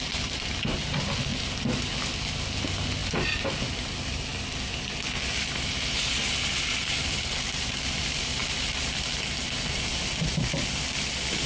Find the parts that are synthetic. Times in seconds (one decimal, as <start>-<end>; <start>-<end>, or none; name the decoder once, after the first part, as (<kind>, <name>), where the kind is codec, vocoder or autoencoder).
none